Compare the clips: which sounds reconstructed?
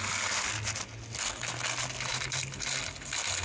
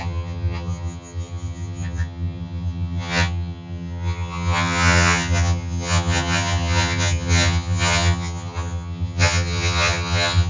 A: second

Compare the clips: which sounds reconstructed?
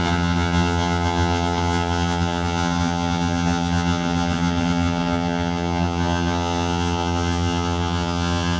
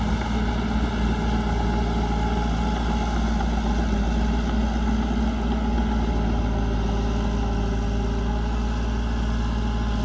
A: first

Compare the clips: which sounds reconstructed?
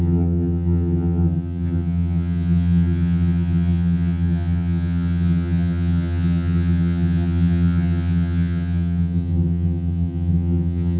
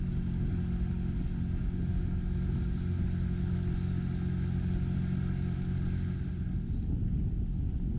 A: first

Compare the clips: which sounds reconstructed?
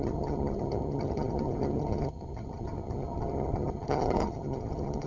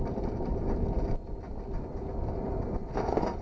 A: first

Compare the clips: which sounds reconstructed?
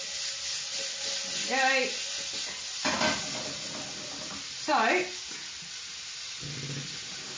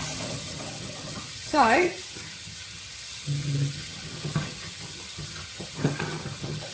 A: second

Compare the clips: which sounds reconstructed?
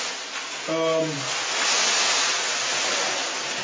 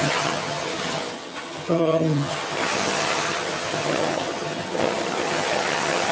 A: second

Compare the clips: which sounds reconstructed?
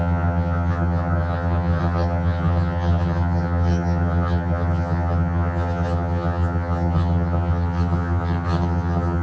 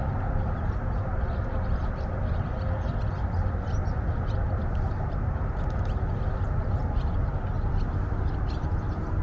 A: first